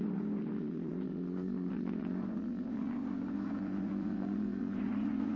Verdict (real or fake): fake